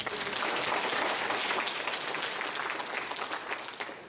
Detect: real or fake real